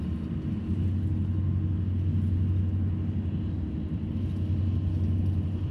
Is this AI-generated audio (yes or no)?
no